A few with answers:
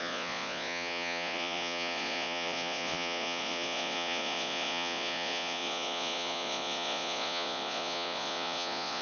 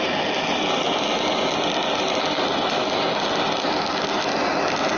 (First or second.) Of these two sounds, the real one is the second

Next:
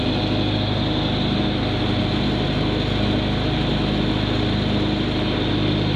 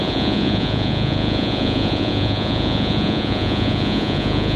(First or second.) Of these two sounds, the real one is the first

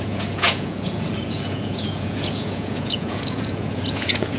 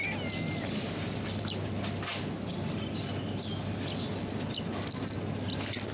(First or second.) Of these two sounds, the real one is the second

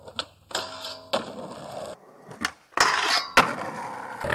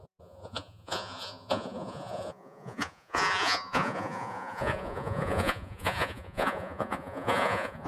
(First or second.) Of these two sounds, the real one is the first